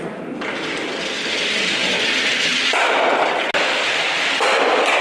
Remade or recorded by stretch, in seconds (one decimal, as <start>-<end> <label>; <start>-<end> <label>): 0.0-5.0 recorded